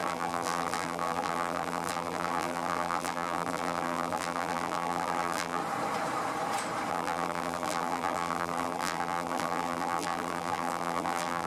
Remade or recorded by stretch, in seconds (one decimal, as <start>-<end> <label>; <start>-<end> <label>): 0.0-5.6 remade; 5.6-6.9 recorded; 6.9-11.5 remade

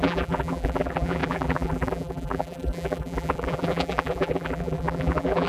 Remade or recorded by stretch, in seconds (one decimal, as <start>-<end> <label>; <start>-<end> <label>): 0.0-5.5 remade

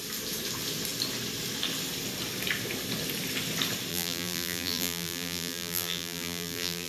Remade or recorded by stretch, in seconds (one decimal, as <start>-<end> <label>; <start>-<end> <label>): 0.0-3.9 recorded; 3.9-6.9 remade

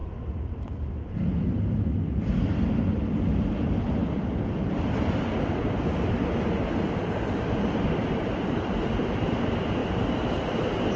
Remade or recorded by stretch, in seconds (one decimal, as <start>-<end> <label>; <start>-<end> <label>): 0.0-11.0 recorded

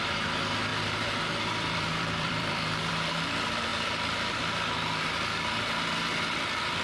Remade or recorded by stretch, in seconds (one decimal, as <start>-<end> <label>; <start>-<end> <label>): 0.0-0.7 recorded; 0.7-2.9 remade; 2.9-6.8 recorded

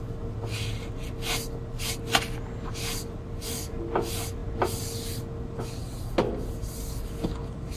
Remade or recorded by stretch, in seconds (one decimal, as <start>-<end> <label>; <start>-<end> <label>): 0.0-7.8 recorded